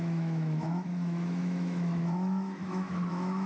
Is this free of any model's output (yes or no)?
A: no